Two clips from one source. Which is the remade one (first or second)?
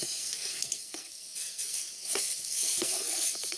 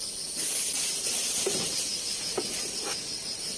first